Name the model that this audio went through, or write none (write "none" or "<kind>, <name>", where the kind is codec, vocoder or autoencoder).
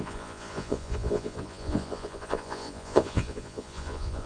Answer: vocoder, Vocos